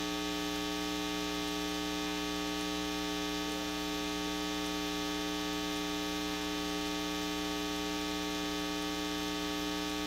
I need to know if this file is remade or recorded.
recorded